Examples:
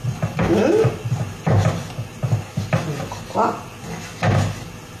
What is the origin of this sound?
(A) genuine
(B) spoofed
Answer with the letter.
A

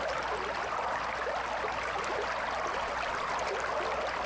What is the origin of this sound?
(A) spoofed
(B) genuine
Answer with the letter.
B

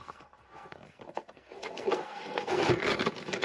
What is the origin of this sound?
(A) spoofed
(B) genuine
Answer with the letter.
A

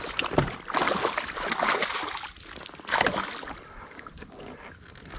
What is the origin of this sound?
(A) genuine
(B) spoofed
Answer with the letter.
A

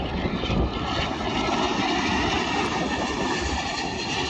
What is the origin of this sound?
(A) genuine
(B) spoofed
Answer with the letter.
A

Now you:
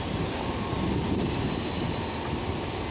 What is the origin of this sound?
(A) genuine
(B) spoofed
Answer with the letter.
A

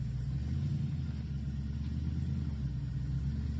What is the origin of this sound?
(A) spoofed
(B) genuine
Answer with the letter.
B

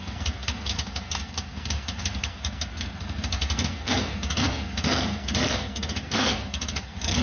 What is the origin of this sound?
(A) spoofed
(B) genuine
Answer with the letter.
A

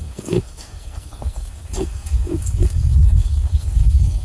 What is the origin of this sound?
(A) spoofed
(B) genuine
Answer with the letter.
A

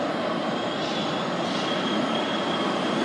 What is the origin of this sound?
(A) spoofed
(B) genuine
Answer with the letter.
B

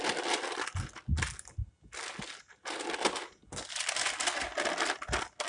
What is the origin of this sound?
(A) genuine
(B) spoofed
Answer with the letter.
A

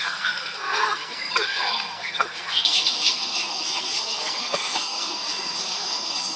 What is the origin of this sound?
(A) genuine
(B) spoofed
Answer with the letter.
B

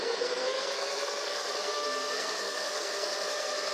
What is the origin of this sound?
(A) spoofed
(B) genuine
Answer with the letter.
A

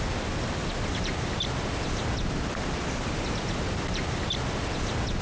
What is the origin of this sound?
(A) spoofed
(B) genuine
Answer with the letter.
B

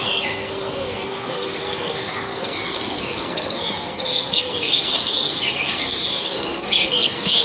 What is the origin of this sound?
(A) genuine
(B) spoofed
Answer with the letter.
B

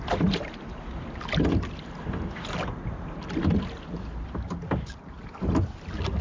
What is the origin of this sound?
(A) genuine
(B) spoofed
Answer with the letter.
A